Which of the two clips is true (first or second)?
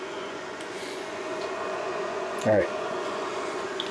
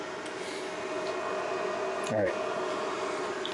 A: second